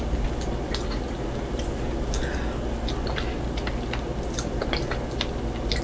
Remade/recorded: recorded